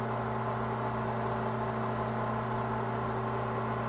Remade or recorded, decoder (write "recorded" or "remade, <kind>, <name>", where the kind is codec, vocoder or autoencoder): recorded